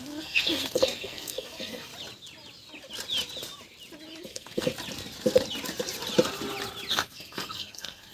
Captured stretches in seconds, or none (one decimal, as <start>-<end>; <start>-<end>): 1.9-4.2; 4.7-6.9